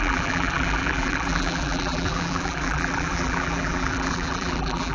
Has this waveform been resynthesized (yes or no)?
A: yes